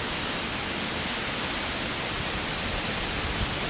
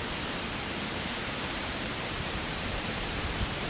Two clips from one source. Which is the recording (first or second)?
first